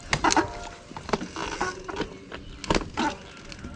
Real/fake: real